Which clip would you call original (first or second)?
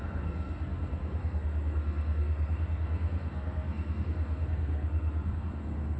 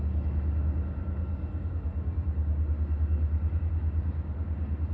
second